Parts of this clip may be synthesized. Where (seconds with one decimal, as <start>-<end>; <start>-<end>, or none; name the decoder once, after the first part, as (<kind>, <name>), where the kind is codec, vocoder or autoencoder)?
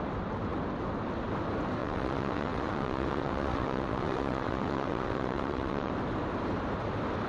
1.8-5.9 (vocoder, WaveNeXt)